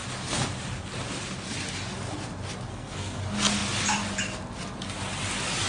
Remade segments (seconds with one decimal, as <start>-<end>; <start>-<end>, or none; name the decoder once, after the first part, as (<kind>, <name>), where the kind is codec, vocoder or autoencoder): 2.7-3.2 (codec, SNAC)